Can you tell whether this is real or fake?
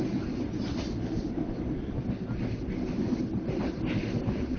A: real